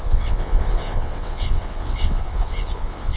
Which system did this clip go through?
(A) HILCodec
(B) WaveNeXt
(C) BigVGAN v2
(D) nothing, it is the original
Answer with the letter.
B